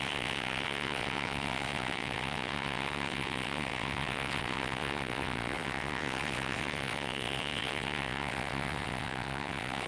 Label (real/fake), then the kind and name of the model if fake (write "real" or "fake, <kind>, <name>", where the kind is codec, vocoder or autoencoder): fake, vocoder, WaveNeXt